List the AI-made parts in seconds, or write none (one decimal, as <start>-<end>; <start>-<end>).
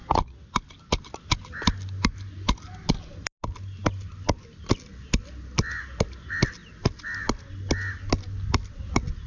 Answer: none